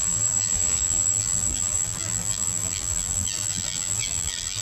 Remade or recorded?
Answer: remade